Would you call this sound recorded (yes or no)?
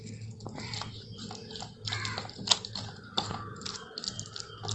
yes